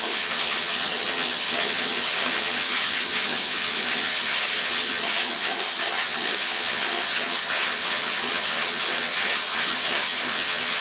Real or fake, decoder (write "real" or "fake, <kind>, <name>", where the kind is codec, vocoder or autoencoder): fake, vocoder, HiFi-GAN